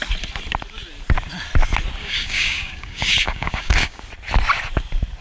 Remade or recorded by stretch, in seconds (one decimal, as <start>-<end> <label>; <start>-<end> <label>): 0.0-2.0 recorded; 2.0-4.0 remade; 4.0-5.2 recorded